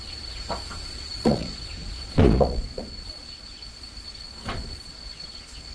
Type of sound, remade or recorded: remade